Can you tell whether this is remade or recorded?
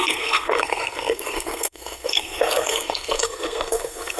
remade